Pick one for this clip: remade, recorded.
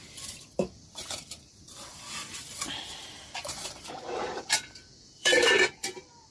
remade